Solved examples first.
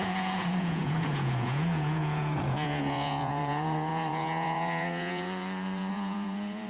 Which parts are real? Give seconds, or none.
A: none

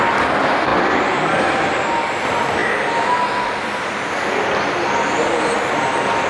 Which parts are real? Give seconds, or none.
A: 0.0-6.3

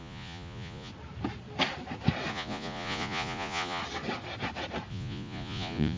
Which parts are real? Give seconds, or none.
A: 0.9-2.3; 3.8-4.9

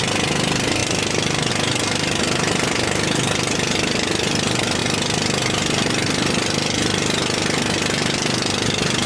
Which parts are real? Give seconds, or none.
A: 0.0-9.1